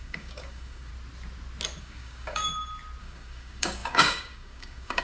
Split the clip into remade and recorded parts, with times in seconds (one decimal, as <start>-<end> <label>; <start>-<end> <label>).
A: 0.0-0.9 remade; 0.9-1.8 recorded; 1.8-2.5 remade; 2.5-3.0 recorded; 3.0-5.0 remade